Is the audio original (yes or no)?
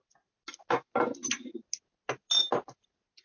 yes